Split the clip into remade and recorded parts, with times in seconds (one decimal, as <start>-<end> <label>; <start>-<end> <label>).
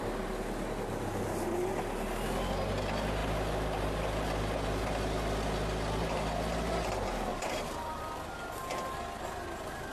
0.0-7.3 recorded; 7.3-8.0 remade; 8.0-9.9 recorded